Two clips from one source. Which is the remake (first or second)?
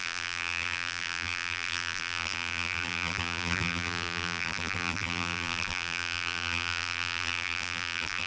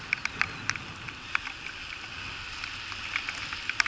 first